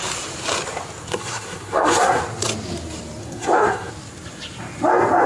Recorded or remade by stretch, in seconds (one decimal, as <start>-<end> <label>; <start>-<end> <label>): 0.0-1.1 recorded; 1.1-2.2 remade; 2.2-3.2 recorded; 3.2-3.9 remade; 3.9-5.3 recorded